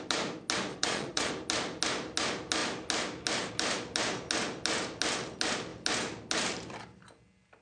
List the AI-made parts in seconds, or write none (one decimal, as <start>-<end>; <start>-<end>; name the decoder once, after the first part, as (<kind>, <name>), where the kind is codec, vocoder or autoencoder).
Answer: 0.7-1.3 (vocoder, Vocos)